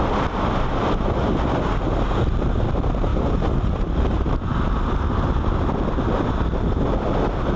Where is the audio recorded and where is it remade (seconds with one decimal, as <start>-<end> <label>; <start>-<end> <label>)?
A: 0.0-7.6 recorded